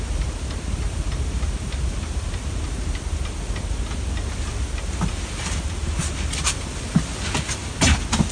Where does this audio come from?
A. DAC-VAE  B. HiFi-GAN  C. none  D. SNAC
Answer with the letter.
C